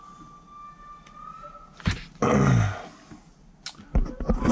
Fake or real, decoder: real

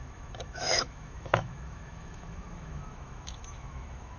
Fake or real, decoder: fake, autoencoder, DAC-VAE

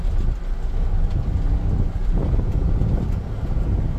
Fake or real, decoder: real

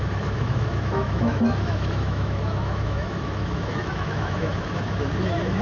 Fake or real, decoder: fake, autoencoder, DAC-VAE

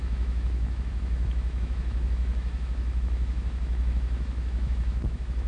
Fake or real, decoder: fake, autoencoder, DAC-VAE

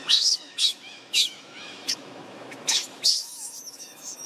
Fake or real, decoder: fake, autoencoder, DAC-VAE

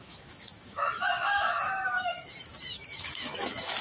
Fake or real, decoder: fake, autoencoder, DAC-VAE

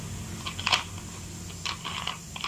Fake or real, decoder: real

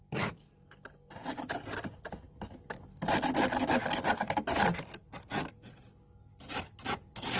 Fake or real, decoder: real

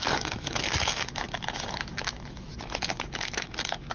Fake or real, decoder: fake, autoencoder, DAC-VAE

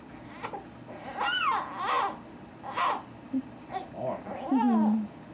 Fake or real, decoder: real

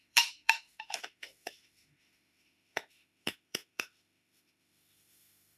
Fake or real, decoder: fake, autoencoder, DAC-VAE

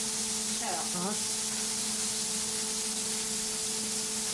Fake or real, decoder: real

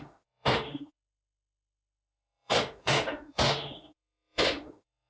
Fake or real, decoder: fake, autoencoder, DAC-VAE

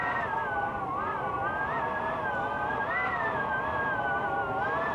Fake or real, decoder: real